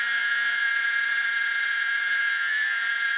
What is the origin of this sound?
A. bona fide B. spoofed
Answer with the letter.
B